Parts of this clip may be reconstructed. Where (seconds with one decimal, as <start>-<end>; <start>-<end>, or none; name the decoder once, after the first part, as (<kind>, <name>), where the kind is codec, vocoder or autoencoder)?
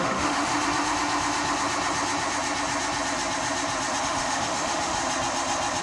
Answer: 0.0-0.5 (autoencoder, DAC-VAE); 4.0-5.0